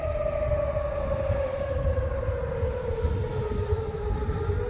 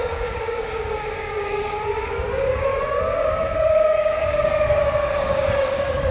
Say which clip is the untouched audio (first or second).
first